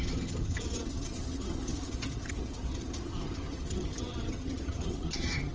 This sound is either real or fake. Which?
fake